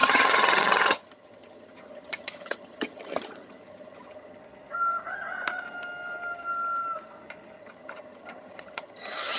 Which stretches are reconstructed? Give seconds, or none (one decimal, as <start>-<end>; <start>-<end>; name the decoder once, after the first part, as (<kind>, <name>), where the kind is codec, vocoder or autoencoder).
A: 0.0-4.4 (vocoder, HiFi-GAN); 7.6-9.4